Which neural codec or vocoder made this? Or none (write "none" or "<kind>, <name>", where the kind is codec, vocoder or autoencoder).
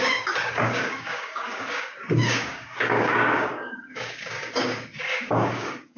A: codec, DAC